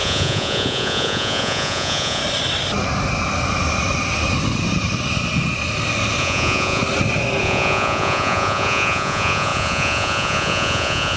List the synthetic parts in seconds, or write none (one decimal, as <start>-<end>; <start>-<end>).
0.0-2.2; 6.2-6.8; 7.4-11.2